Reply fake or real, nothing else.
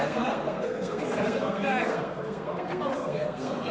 fake